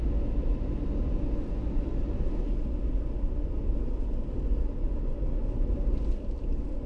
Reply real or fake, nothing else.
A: real